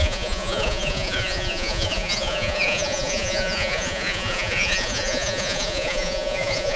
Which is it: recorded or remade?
remade